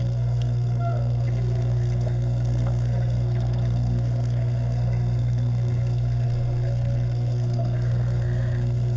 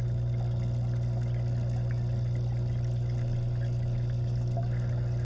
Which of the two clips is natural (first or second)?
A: second